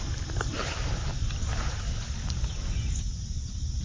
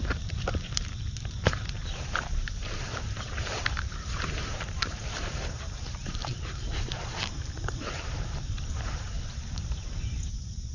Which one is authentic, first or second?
first